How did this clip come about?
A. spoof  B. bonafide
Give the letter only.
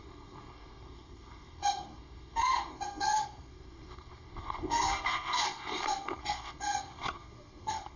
A